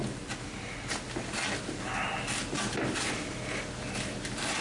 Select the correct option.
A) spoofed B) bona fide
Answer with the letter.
B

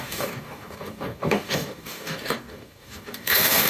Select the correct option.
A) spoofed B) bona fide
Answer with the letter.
A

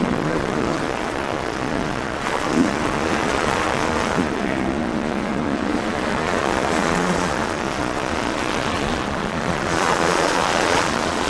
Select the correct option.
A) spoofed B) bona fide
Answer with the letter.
A